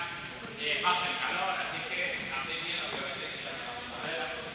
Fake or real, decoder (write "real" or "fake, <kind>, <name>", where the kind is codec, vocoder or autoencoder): real